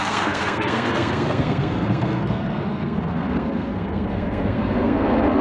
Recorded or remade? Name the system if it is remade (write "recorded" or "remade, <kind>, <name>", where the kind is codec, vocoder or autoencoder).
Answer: remade, codec, SNAC